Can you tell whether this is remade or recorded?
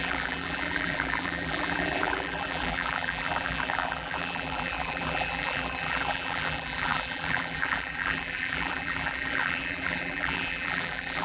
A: remade